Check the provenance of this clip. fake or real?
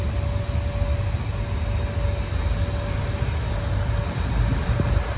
real